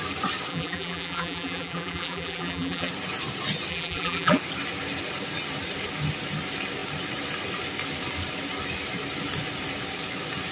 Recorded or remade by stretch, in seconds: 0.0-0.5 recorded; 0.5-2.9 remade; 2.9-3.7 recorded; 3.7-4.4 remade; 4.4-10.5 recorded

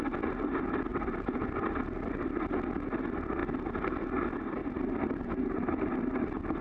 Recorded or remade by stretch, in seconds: 0.0-0.9 recorded; 0.9-1.8 remade; 1.8-4.6 recorded; 4.6-6.0 remade; 6.0-6.6 recorded

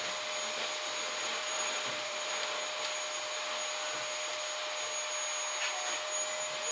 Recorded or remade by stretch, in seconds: 0.0-1.2 recorded; 1.2-2.3 remade; 2.3-6.7 recorded

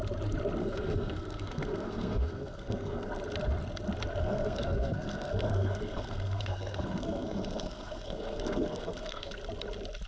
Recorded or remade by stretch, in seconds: 0.0-0.6 recorded; 0.6-3.1 remade; 3.1-4.2 recorded; 4.2-9.3 remade; 9.3-10.1 recorded

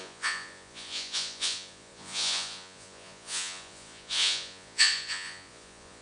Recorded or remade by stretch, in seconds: 0.0-6.0 remade